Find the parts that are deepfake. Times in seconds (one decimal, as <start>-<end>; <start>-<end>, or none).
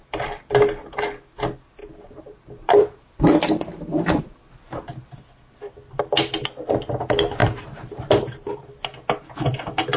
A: 1.8-4.2; 7.4-8.6